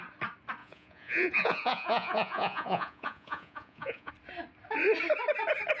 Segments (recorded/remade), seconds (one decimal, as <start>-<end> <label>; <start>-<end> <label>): 0.0-0.6 recorded; 0.6-4.1 remade; 4.1-5.8 recorded